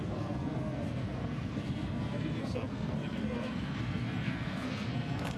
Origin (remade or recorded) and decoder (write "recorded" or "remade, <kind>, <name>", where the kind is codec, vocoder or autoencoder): remade, codec, SNAC